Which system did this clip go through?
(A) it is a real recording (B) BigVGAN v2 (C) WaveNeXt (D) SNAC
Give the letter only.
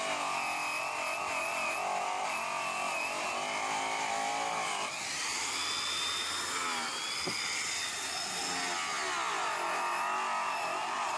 A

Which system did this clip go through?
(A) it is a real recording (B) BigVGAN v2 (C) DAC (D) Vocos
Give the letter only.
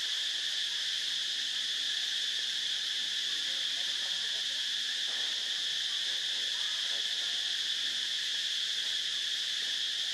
B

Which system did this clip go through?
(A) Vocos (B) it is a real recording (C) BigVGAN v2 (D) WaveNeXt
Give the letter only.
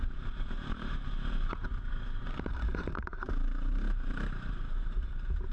C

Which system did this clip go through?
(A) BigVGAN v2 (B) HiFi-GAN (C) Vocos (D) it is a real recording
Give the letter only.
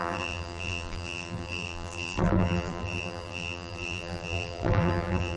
A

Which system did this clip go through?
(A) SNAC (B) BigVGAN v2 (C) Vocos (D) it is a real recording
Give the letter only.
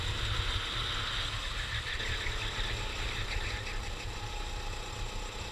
D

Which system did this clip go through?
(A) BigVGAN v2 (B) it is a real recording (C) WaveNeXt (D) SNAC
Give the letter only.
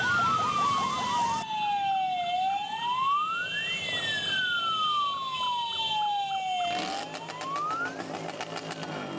B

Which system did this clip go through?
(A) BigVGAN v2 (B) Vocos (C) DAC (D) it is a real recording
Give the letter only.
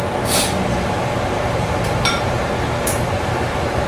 A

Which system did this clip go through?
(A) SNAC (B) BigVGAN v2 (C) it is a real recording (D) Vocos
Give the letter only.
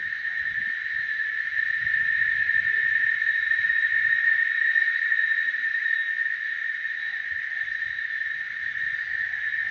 B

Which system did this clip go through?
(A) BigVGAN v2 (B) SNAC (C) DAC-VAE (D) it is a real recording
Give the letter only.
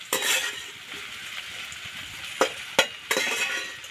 D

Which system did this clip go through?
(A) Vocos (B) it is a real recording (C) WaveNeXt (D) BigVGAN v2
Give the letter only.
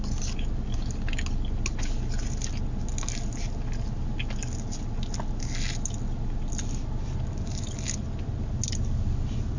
B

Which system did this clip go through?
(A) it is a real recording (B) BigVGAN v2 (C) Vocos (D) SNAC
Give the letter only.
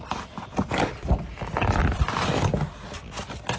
A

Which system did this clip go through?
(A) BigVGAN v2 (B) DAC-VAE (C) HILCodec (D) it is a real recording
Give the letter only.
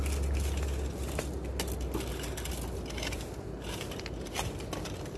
D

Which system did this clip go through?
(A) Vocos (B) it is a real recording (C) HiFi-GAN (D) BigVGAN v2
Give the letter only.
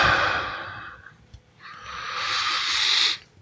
D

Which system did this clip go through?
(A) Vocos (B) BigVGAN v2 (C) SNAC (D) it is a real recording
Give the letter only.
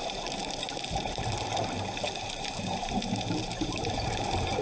B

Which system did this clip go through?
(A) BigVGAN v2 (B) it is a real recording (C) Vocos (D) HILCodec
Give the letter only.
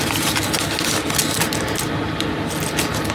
B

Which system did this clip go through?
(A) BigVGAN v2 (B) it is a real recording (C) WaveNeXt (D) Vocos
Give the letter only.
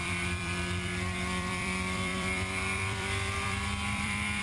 A